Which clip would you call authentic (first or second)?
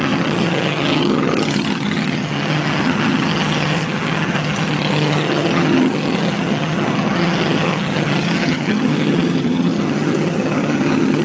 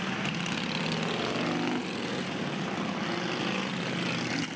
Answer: second